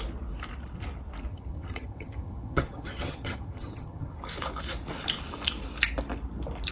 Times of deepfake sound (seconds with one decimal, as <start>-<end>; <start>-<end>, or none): 1.3-4.2